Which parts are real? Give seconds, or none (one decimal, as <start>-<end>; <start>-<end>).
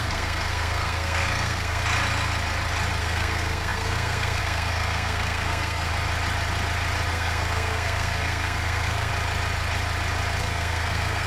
1.8-3.0; 5.9-7.1; 9.1-10.4